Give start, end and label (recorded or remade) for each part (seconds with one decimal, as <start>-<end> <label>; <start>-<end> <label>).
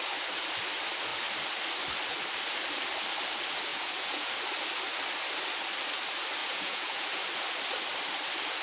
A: 0.0-3.7 recorded; 3.7-4.3 remade; 4.3-6.4 recorded; 6.4-7.2 remade; 7.2-8.6 recorded